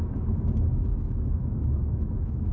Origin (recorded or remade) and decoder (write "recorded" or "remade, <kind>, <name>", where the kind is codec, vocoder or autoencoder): remade, autoencoder, DAC-VAE